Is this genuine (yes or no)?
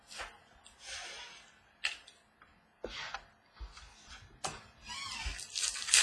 yes